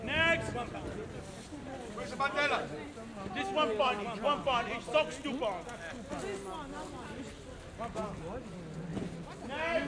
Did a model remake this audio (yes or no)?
no